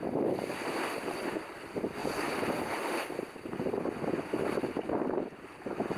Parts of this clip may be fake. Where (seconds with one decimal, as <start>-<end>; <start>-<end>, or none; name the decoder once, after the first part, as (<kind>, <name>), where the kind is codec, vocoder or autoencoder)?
none